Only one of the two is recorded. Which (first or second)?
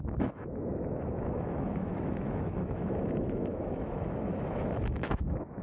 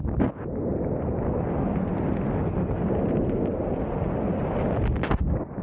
second